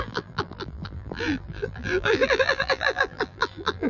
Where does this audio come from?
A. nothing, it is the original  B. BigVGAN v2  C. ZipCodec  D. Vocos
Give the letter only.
B